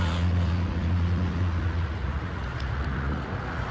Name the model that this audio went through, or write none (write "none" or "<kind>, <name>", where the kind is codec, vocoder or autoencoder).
vocoder, Vocos